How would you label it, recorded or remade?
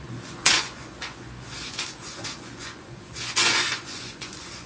remade